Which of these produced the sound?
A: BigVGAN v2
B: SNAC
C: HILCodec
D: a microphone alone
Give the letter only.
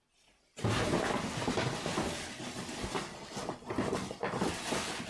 D